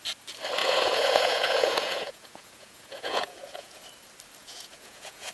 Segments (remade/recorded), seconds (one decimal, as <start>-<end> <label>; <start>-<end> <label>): 0.0-0.6 recorded; 0.6-3.8 remade; 3.8-4.4 recorded; 4.4-5.3 remade